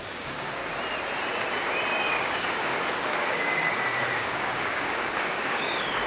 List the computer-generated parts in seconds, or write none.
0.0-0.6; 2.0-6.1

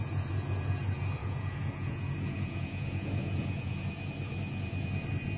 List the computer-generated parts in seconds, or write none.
1.2-3.9

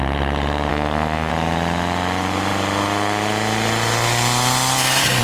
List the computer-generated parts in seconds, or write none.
0.7-1.3

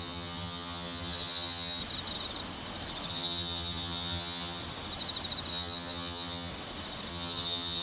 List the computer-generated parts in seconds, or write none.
0.0-1.8; 3.1-4.6; 5.5-6.5; 7.1-7.8

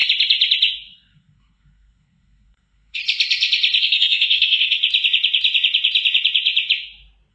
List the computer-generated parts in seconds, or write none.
0.9-3.0; 3.8-4.8

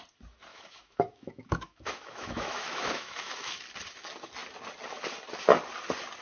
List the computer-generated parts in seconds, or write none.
0.5-3.6

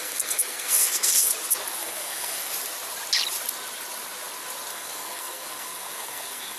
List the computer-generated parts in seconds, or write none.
0.0-1.3; 1.8-2.5; 4.7-6.6

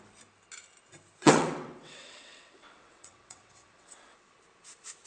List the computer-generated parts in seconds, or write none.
1.2-4.3